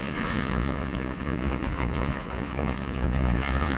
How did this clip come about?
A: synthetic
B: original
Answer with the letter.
A